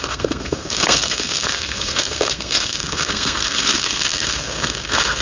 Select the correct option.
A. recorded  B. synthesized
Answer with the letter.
B